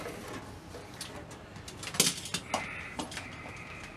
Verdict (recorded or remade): recorded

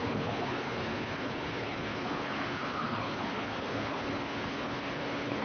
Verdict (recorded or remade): remade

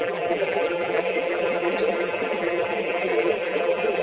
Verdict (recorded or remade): remade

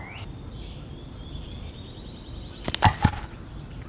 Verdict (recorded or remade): recorded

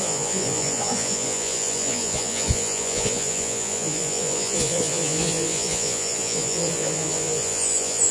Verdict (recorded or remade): remade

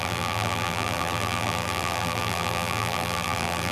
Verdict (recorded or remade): remade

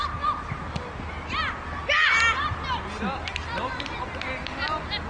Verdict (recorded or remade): recorded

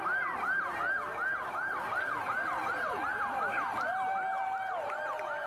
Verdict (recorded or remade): remade